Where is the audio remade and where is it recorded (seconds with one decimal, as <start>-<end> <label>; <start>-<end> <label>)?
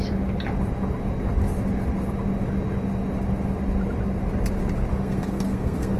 0.0-4.9 recorded; 4.9-6.0 remade